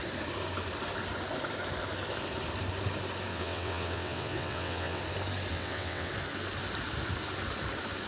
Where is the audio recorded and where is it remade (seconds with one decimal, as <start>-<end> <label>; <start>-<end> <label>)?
0.0-3.3 recorded; 3.3-5.0 remade; 5.0-5.5 recorded; 5.5-6.1 remade; 6.1-8.1 recorded